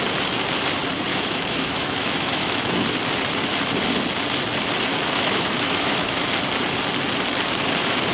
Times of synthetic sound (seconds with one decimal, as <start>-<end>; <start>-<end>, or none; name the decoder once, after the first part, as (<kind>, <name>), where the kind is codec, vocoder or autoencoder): 1.1-2.9 (autoencoder, DAC-VAE); 4.9-6.3

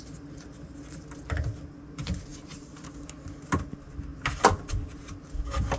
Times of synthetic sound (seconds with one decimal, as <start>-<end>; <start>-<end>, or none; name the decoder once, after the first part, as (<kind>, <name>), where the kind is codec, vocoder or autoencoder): 2.3-2.9 (vocoder, BigVGAN v2)

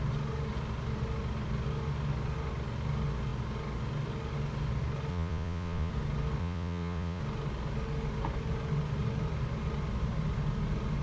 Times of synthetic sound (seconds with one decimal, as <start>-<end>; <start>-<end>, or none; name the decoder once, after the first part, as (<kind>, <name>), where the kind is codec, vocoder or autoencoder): 5.1-5.9 (vocoder, Vocos); 6.4-7.2

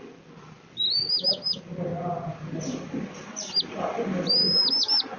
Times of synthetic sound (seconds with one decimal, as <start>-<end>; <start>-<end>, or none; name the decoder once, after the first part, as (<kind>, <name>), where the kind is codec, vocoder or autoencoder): none

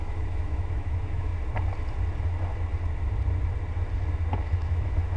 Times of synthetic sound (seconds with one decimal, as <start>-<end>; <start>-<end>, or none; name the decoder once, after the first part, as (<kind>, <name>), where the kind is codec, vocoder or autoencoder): 0.0-1.3 (autoencoder, DAC-VAE); 4.4-5.2

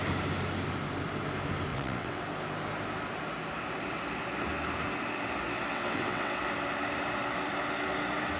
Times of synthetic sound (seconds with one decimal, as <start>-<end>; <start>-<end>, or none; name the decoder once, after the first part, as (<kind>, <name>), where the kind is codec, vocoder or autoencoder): 1.7-2.2 (vocoder, WaveNeXt); 5.7-6.4